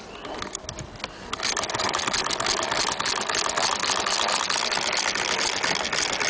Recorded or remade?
recorded